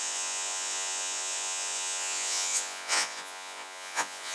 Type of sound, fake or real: fake